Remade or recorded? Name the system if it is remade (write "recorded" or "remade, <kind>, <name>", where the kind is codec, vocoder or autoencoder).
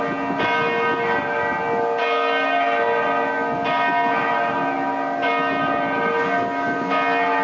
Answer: recorded